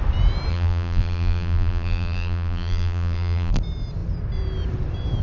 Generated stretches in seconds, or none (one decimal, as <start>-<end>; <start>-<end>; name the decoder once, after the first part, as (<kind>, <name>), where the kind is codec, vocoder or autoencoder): 0.5-3.6 (vocoder, BigVGAN v2)